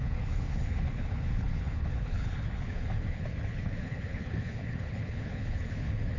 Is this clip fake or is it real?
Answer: fake